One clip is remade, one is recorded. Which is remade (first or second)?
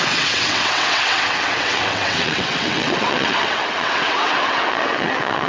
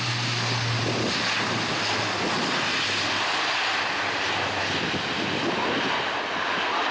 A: first